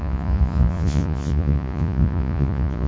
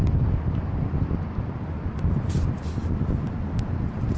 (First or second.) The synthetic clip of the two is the first